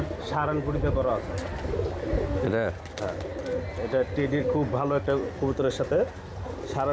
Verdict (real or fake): real